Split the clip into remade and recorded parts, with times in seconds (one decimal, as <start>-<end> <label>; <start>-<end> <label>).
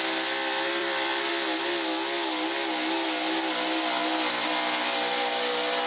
0.0-0.8 recorded; 0.8-1.3 remade; 1.3-5.9 recorded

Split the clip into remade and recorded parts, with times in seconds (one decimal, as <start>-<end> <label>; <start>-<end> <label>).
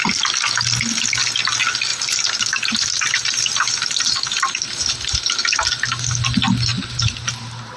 0.0-1.9 recorded; 1.9-5.7 remade; 5.7-6.7 recorded; 6.7-7.8 remade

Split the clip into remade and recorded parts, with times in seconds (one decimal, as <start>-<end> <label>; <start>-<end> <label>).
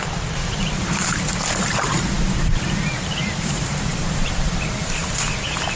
0.0-5.0 remade; 5.0-5.8 recorded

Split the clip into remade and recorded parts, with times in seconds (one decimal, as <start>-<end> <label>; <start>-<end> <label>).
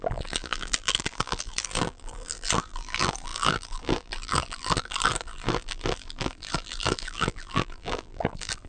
0.0-8.7 remade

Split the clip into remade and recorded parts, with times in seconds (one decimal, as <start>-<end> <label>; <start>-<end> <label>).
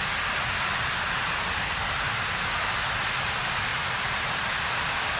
0.0-3.7 recorded; 3.7-4.5 remade; 4.5-5.2 recorded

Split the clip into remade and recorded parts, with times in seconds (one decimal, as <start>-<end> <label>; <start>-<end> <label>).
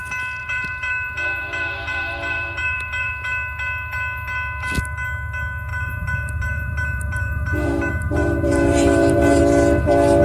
0.0-0.4 recorded; 0.4-3.1 remade; 3.1-5.7 recorded; 5.7-9.4 remade; 9.4-10.2 recorded